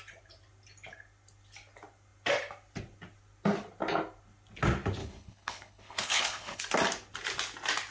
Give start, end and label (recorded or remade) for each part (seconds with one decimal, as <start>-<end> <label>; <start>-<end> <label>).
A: 0.0-5.0 recorded; 5.0-6.6 remade; 6.6-7.9 recorded